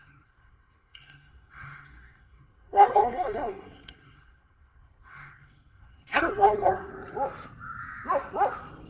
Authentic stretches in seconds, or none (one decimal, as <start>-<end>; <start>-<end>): 6.9-8.9